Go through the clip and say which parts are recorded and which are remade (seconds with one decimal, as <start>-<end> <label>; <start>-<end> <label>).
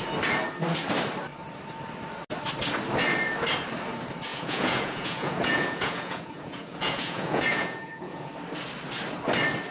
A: 0.0-4.3 recorded; 4.3-8.3 remade; 8.3-9.7 recorded